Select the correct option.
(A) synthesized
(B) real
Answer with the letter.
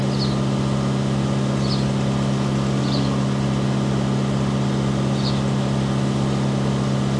B